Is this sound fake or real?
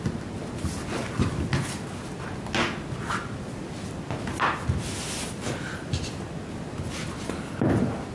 real